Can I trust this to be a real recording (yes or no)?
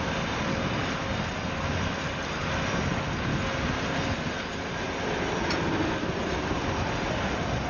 yes